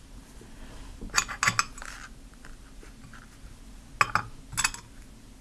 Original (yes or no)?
yes